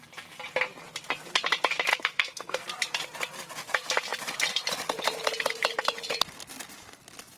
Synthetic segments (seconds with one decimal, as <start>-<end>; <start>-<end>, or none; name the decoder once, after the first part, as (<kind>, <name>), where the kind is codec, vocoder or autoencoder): 1.9-2.6 (codec, SNAC)

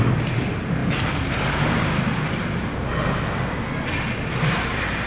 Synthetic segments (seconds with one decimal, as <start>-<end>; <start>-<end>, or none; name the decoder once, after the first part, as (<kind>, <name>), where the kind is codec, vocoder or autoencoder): none

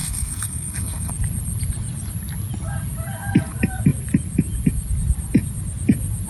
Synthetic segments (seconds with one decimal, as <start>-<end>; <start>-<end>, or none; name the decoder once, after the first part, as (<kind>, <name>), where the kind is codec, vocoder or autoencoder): 0.0-1.1 (codec, SNAC)

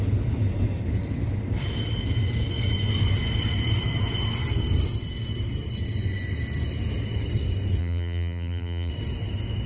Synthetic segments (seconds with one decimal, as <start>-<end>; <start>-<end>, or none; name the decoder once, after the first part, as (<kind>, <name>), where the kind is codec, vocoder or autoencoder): 7.8-8.9 (vocoder, BigVGAN v2)

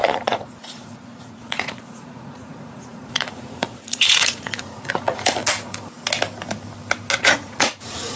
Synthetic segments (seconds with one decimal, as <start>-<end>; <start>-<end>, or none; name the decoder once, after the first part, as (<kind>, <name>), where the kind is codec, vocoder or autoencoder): 0.0-5.4 (vocoder, Vocos); 7.2-8.2

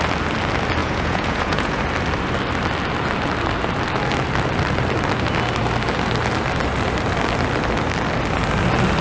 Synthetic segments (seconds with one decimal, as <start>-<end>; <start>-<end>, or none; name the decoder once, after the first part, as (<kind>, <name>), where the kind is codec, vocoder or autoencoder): 0.8-1.8 (vocoder, Vocos)